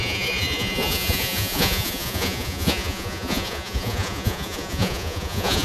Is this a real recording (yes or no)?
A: no